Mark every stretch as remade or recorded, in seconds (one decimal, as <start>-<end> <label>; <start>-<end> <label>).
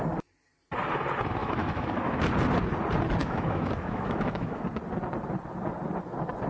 0.0-1.4 recorded; 1.4-2.2 remade; 2.2-3.2 recorded; 3.2-4.6 remade; 4.6-6.5 recorded